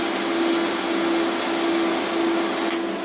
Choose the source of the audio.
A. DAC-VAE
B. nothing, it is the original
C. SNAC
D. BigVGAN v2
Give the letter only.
B